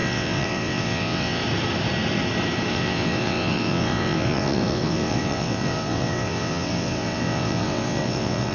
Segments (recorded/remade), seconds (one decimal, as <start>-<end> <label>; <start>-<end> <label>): 0.0-1.4 remade; 1.4-2.7 recorded; 2.7-8.5 remade